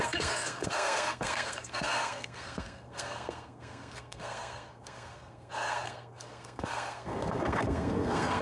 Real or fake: fake